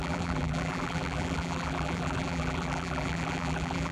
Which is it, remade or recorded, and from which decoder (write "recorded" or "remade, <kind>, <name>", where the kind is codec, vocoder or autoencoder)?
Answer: remade, vocoder, BigVGAN v2